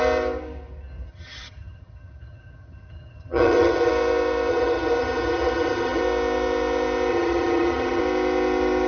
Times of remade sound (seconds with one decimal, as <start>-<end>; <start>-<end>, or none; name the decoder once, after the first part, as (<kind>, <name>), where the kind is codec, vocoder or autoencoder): 1.1-3.9 (vocoder, HiFi-GAN); 4.5-6.0; 7.1-8.0